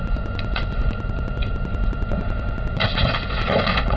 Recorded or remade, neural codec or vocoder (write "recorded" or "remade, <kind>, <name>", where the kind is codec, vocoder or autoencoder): remade, vocoder, Vocos